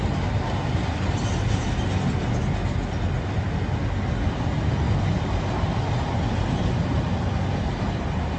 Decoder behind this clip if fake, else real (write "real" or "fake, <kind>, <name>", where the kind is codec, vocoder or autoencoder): real